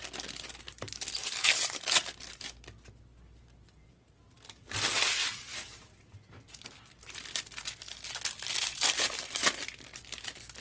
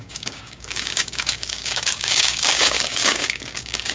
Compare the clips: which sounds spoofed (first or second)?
second